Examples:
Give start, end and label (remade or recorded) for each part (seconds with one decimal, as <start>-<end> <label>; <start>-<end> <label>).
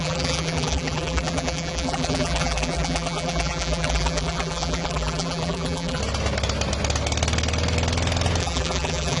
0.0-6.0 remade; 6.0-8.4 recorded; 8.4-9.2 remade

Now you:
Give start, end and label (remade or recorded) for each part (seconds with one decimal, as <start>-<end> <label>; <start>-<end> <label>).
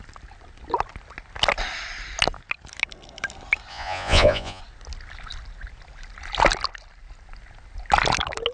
0.0-3.7 recorded; 3.7-4.6 remade; 4.6-8.5 recorded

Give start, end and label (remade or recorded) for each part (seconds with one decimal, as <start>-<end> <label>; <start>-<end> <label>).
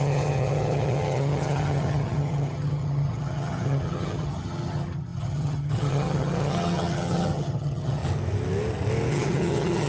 0.0-8.0 remade; 8.0-9.1 recorded; 9.1-9.9 remade